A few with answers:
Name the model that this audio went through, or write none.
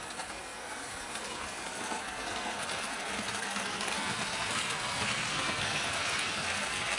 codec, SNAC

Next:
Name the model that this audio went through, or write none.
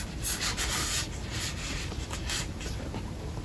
none